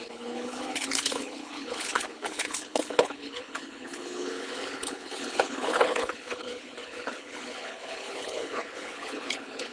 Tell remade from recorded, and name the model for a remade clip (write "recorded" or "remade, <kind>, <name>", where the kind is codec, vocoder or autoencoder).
remade, codec, HILCodec